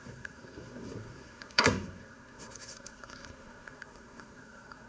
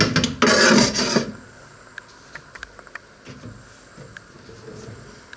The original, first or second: second